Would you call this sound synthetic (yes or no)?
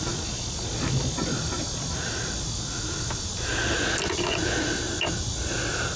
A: no